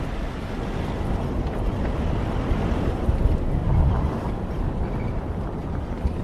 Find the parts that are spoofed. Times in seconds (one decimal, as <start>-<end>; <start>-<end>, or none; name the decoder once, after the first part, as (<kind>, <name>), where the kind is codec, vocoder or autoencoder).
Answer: 3.6-5.2 (vocoder, BigVGAN v2)